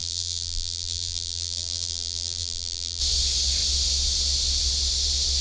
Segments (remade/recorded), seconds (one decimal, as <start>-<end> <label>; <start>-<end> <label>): 0.0-3.0 remade; 3.0-5.4 recorded